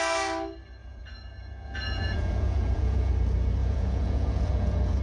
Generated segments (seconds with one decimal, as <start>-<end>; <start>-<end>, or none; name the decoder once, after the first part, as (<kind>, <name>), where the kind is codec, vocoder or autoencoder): 0.8-3.1 (vocoder, Vocos); 3.6-5.0